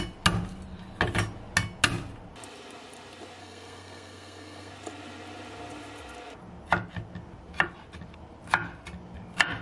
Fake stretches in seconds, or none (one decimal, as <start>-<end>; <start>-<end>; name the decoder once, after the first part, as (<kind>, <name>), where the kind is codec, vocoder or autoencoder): 3.4-4.7 (codec, SNAC)